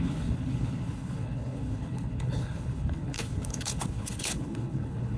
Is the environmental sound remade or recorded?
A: remade